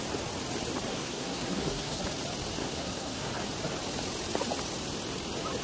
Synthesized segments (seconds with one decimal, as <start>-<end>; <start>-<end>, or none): 0.9-2.0; 2.6-3.3